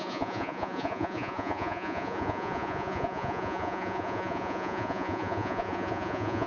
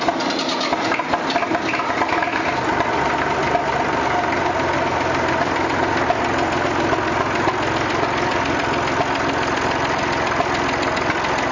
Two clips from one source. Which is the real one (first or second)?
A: second